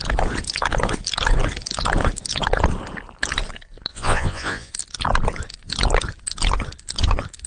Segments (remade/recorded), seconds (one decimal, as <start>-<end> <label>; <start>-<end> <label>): 0.0-3.9 recorded; 3.9-4.7 remade; 4.7-7.5 recorded